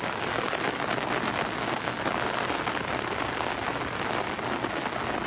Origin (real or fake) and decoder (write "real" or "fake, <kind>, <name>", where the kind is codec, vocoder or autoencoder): real